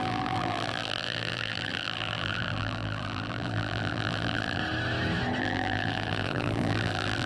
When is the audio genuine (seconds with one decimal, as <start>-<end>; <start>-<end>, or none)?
4.6-5.4